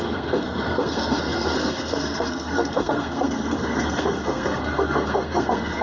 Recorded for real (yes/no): no